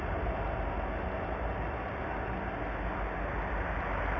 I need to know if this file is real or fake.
real